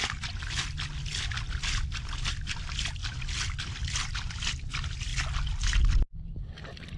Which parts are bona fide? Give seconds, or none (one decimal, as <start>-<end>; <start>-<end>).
0.0-7.0